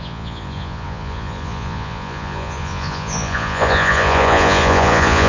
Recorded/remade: remade